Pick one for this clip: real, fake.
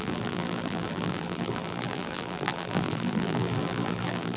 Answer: fake